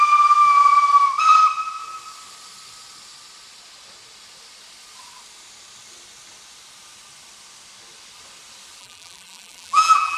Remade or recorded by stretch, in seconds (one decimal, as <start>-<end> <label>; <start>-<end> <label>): 0.0-8.8 recorded; 8.8-10.2 remade